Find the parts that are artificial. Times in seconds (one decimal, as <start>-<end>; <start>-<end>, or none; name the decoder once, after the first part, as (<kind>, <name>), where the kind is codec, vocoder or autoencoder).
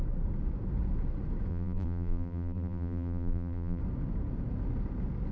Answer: 1.5-3.8 (vocoder, BigVGAN v2)